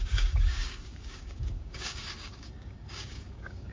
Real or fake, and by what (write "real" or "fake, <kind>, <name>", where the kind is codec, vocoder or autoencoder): fake, codec, DAC